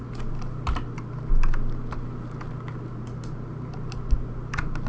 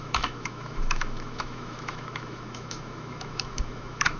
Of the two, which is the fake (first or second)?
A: second